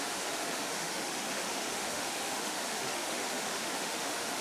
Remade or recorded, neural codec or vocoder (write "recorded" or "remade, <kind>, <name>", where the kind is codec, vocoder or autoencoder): remade, autoencoder, DAC-VAE